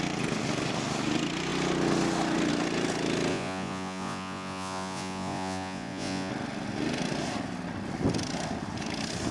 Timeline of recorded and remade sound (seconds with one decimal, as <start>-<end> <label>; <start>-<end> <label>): 0.0-3.3 recorded; 3.3-6.3 remade; 6.3-9.3 recorded